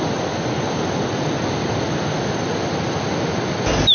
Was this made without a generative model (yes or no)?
yes